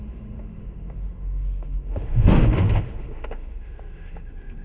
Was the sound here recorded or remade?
remade